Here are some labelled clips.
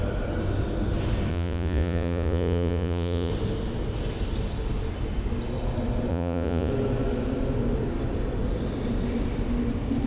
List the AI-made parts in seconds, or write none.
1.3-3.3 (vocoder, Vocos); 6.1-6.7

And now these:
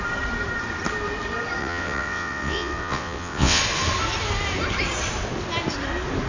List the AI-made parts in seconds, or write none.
1.6-3.6 (vocoder, WaveNeXt)

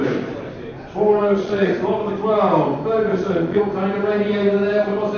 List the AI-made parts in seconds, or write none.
1.2-1.7 (vocoder, Vocos); 3.1-3.6

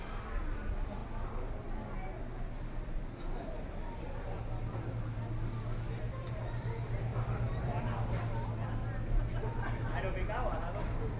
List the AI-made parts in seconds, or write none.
7.1-7.8 (vocoder, BigVGAN v2)

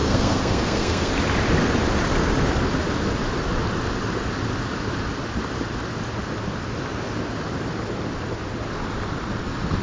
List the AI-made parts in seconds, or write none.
0.0-1.1 (codec, SNAC)

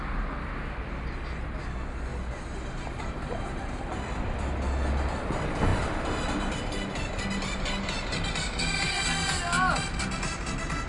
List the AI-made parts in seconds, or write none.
none

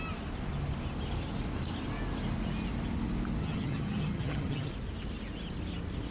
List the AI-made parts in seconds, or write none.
3.4-4.7 (vocoder, HiFi-GAN)